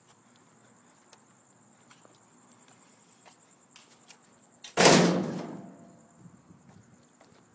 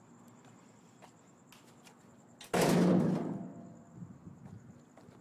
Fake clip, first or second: first